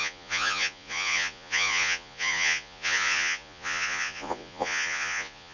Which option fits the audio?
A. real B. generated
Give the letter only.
B